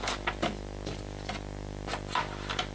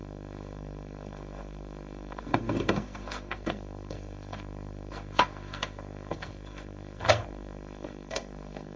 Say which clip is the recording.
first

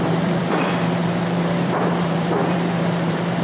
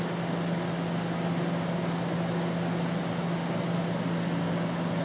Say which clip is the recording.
second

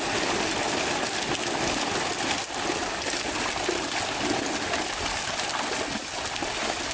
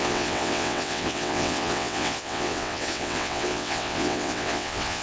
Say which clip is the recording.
first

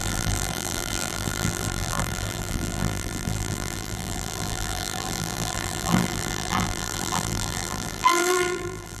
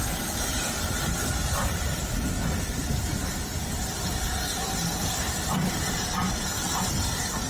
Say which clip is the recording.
second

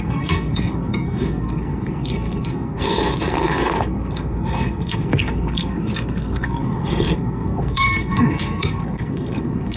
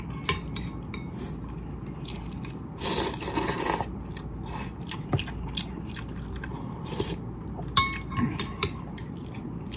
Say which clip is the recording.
second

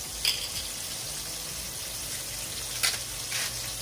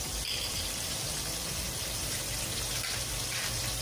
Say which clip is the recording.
first